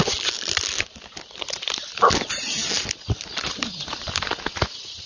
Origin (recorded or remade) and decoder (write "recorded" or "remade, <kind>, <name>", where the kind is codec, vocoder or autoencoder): recorded